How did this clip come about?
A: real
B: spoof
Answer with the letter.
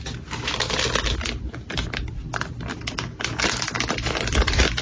A